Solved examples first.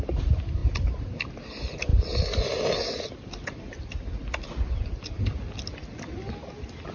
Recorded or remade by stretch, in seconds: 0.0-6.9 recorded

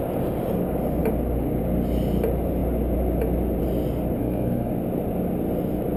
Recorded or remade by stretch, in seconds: 0.0-4.2 recorded; 4.2-4.7 remade; 4.7-6.0 recorded

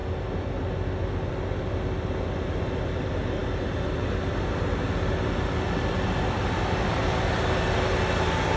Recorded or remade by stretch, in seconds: 0.0-8.6 recorded

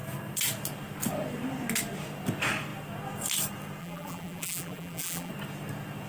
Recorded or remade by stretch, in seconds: 0.0-3.8 recorded; 3.8-5.3 remade; 5.3-6.1 recorded